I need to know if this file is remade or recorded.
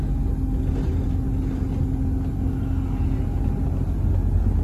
recorded